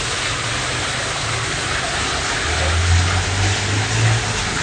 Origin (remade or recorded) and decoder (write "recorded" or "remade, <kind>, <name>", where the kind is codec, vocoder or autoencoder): recorded